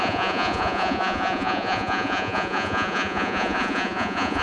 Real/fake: fake